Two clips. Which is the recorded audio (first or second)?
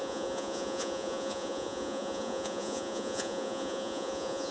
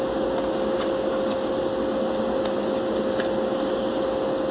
second